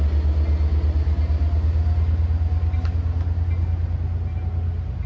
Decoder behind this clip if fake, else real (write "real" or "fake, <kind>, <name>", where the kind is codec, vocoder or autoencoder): real